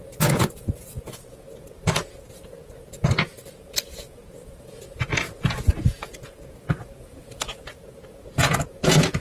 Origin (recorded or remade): remade